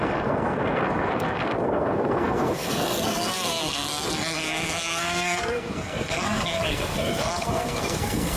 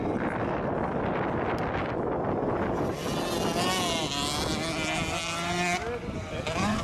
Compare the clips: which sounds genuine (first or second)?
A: second